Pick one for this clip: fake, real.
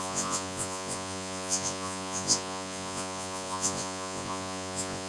fake